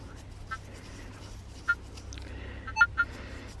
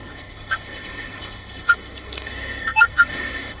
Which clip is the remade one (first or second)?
second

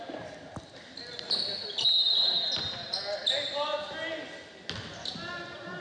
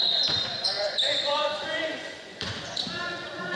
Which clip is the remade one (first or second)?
second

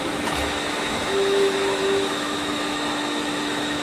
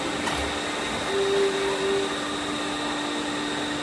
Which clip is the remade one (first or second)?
first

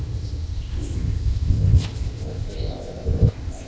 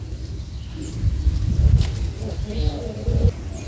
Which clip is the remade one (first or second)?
first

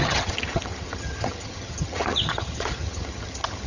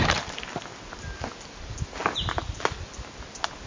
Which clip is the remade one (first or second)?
first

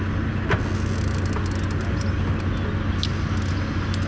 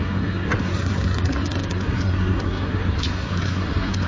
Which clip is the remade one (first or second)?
second